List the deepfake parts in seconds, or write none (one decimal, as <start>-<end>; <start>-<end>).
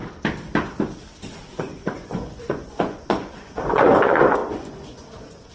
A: 1.5-5.5